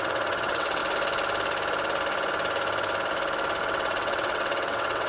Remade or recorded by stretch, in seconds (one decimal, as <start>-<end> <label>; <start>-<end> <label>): 0.0-0.8 remade; 0.8-3.6 recorded; 3.6-5.1 remade